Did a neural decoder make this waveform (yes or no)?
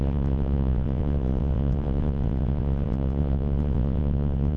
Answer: yes